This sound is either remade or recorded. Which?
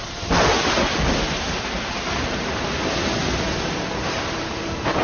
recorded